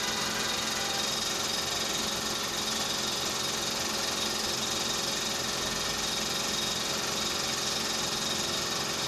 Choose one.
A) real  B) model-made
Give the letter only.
A